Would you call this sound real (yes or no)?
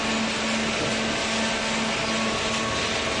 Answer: yes